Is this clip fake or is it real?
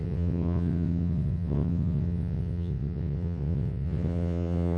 fake